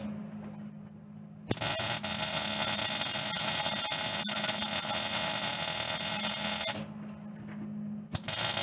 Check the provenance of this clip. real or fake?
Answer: real